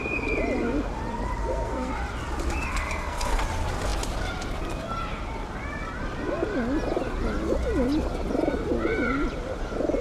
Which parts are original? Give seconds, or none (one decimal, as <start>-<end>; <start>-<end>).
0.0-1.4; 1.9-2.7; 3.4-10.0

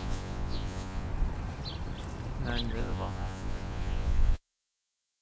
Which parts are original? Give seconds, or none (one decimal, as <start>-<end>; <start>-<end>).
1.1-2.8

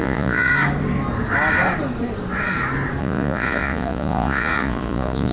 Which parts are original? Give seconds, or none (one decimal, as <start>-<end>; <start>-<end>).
0.5-3.0